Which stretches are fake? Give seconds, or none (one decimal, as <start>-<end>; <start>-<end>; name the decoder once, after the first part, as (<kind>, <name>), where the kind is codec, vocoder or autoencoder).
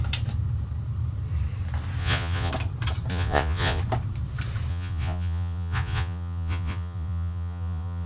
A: 2.0-2.5 (vocoder, Vocos); 3.1-3.8; 4.7-8.1